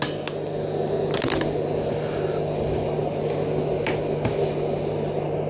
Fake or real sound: real